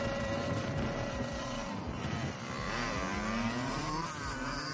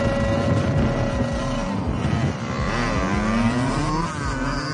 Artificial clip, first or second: first